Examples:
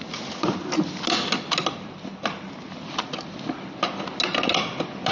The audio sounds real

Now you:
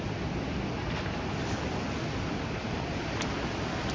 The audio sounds real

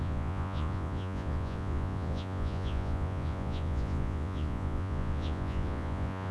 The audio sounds fake